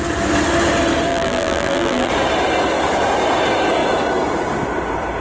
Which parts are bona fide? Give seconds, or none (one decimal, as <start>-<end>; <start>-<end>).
0.0-1.1; 2.1-5.2